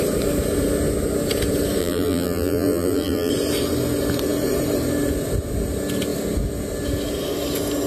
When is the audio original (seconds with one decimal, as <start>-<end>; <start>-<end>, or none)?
0.0-1.8; 3.3-7.9